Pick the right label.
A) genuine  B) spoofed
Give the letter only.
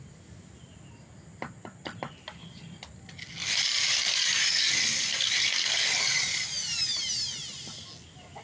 A